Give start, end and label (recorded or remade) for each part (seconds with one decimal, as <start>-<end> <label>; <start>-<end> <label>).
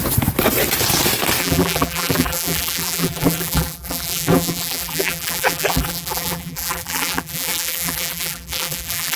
0.0-1.4 recorded; 1.4-9.2 remade